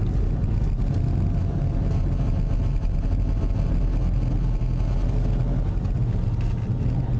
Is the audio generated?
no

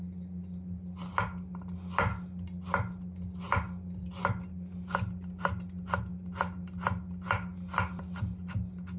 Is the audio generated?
no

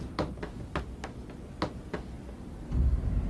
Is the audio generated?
no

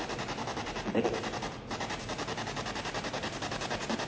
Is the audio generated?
no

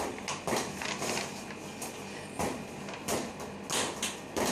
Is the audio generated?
no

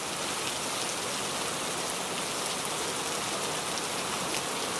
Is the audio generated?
no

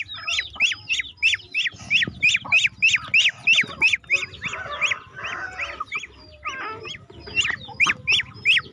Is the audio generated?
no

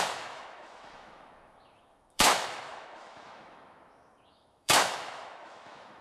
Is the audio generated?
yes